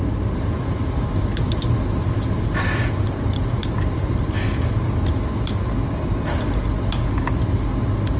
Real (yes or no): yes